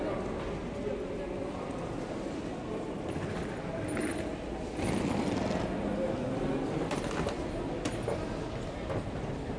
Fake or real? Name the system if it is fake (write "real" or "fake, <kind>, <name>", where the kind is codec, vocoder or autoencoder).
real